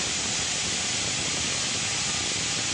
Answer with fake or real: real